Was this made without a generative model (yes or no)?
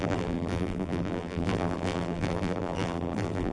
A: no